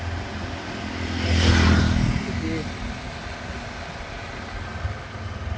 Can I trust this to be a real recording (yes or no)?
yes